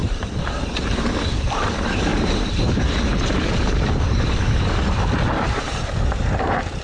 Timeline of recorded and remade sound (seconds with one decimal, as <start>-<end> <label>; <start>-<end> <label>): 0.0-6.8 remade